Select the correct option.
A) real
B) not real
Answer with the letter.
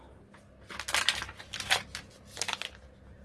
A